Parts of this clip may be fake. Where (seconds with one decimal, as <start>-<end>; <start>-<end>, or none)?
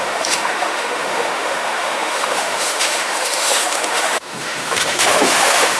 0.0-5.8